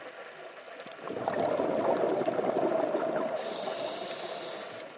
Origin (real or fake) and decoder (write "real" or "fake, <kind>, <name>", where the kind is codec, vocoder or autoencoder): real